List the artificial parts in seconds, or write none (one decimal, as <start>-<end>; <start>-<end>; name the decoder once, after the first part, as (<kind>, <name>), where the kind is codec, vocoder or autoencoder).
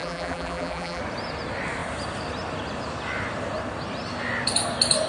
0.0-1.0 (vocoder, BigVGAN v2)